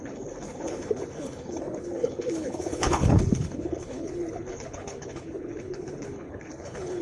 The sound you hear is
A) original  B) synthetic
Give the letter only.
B